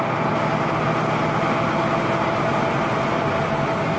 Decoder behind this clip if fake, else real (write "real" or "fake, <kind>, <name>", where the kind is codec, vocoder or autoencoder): real